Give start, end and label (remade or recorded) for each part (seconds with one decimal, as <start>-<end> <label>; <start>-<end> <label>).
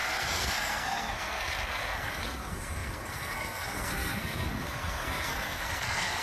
0.0-6.2 remade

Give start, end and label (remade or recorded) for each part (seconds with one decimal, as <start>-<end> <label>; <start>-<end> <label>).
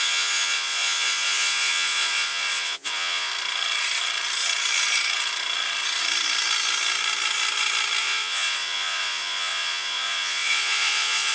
0.0-3.3 remade; 3.3-8.0 recorded; 8.0-11.3 remade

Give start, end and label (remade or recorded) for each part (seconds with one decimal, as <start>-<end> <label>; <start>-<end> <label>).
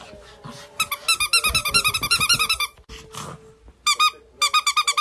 0.0-1.6 recorded; 1.6-2.9 remade; 2.9-5.0 recorded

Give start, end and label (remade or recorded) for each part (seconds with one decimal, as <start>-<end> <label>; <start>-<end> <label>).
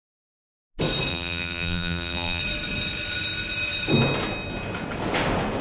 0.0-1.1 recorded; 1.1-2.4 remade; 2.4-5.6 recorded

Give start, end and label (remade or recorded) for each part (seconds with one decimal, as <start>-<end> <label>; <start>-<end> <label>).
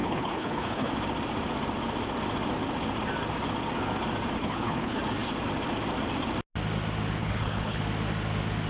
0.0-0.9 remade; 0.9-4.4 recorded; 4.4-5.0 remade; 5.0-7.2 recorded; 7.2-7.8 remade; 7.8-8.7 recorded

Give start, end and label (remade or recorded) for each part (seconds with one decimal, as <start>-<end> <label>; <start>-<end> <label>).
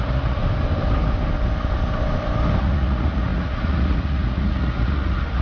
0.0-0.4 remade; 0.4-2.6 recorded; 2.6-5.4 remade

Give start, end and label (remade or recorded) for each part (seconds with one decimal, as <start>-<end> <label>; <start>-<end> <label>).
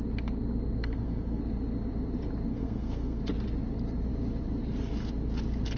0.0-0.8 recorded; 0.8-1.4 remade; 1.4-2.5 recorded; 2.5-3.2 remade; 3.2-5.8 recorded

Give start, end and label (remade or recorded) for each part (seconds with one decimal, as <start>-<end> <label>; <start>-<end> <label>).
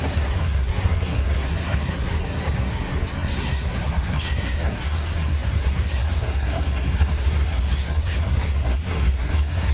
0.0-9.7 remade